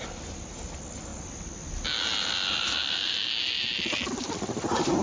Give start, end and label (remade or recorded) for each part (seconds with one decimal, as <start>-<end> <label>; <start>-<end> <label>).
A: 0.0-5.0 recorded